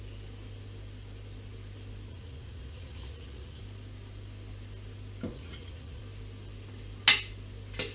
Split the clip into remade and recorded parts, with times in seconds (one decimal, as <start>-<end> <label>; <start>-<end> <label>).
0.0-2.1 recorded; 2.1-3.6 remade; 3.6-5.3 recorded; 5.3-6.0 remade; 6.0-7.9 recorded